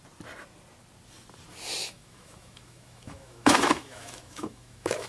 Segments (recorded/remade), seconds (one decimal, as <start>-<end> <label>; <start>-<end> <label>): 0.0-1.8 recorded; 1.8-5.1 remade